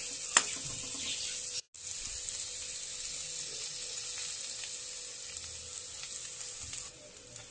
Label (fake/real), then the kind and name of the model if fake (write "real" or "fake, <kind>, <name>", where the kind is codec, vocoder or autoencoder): real